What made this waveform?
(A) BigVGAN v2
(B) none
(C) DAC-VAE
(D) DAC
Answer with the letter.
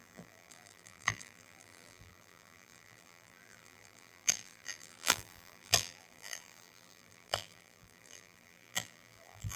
A